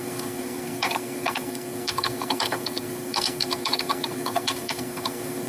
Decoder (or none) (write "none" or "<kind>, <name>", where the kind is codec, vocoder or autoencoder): codec, SNAC